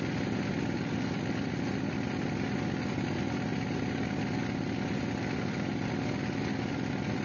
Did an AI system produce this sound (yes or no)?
no